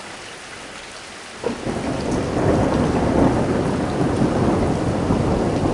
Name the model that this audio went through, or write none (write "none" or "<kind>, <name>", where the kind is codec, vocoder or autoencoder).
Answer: none